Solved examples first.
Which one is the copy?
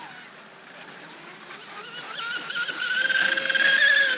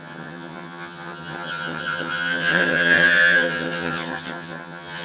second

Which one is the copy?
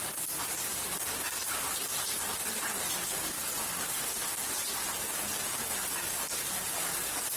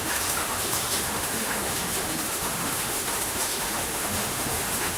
second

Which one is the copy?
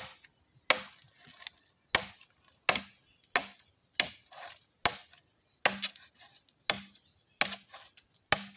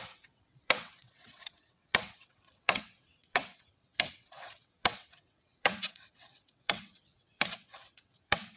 second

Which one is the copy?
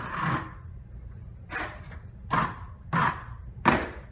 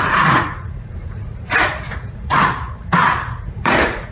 second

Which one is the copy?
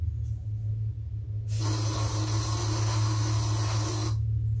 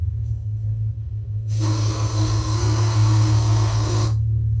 second